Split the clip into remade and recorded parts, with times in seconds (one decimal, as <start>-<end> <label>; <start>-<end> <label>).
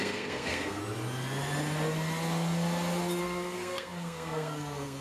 0.0-0.8 remade; 0.8-3.2 recorded; 3.2-5.0 remade